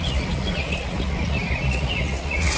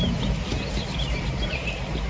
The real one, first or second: second